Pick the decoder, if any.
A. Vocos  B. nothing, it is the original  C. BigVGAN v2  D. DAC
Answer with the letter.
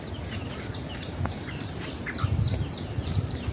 C